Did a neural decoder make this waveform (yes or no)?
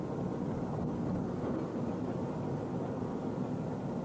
no